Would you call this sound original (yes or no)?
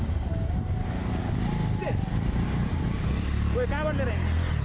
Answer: yes